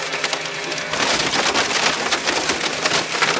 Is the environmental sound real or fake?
real